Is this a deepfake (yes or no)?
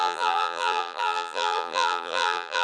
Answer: yes